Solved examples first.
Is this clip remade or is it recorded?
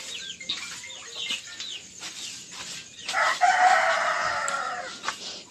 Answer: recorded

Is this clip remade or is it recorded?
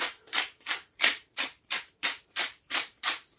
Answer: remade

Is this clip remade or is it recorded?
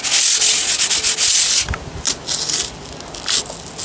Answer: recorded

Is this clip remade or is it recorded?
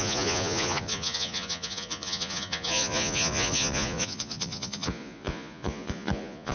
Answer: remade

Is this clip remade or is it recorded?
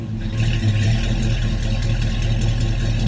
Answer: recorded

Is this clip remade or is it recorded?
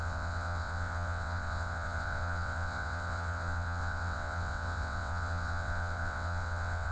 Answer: remade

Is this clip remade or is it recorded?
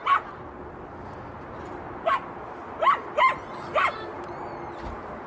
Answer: recorded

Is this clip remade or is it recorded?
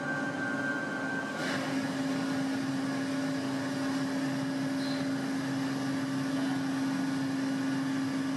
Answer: recorded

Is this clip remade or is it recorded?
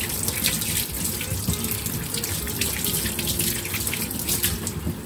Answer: recorded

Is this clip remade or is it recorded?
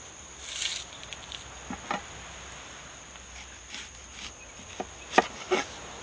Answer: recorded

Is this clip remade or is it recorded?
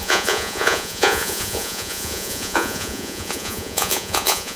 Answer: remade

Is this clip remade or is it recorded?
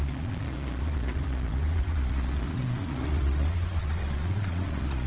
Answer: remade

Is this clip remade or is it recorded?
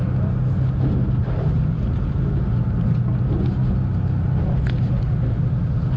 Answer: recorded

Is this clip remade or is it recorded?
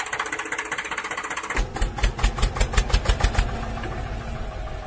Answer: recorded